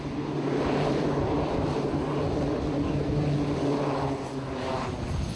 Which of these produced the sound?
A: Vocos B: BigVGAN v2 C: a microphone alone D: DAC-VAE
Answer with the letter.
C